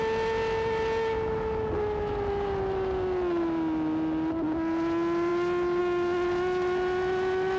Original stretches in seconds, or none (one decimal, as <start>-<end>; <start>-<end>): 0.0-7.6